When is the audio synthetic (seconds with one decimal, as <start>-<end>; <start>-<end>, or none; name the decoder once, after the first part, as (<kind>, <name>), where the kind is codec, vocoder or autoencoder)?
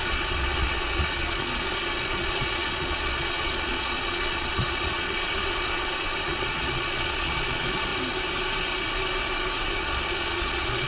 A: 0.0-7.9 (vocoder, Vocos); 9.7-10.9